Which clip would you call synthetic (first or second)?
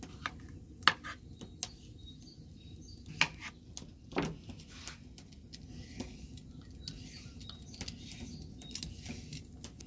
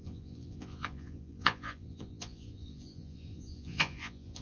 second